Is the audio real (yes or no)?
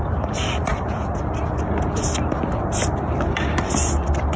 yes